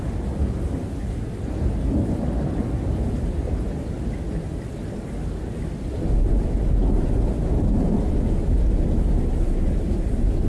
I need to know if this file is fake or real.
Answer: real